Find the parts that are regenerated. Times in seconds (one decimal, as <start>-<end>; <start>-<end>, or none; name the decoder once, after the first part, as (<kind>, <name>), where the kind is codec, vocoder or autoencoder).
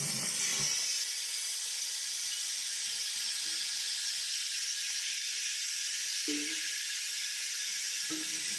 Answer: 4.3-5.0 (vocoder, BigVGAN v2); 6.1-8.1